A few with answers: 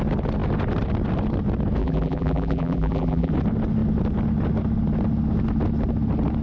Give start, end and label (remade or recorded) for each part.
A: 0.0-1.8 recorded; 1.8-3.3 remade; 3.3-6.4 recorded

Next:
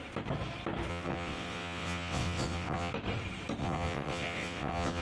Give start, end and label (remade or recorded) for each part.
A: 0.0-0.9 recorded; 0.9-2.9 remade; 2.9-3.6 recorded; 3.6-5.0 remade

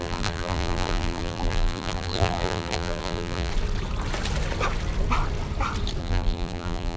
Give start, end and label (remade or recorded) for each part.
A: 0.0-3.5 remade; 3.5-6.0 recorded; 6.0-7.0 remade

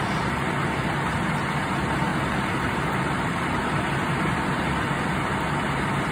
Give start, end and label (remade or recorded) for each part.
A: 0.0-2.1 recorded; 2.1-3.6 remade; 3.6-6.1 recorded

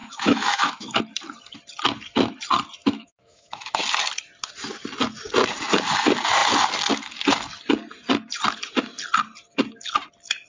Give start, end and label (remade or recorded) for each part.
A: 0.0-1.0 remade; 1.0-2.8 recorded; 2.8-3.8 remade; 3.8-10.5 recorded

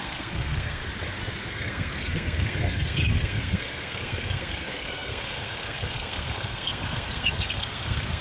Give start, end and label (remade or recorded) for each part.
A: 0.0-0.8 remade; 0.8-1.5 recorded; 1.5-8.2 remade

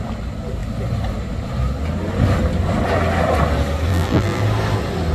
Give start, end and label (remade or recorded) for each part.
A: 0.0-3.9 recorded; 3.9-4.4 remade; 4.4-5.1 recorded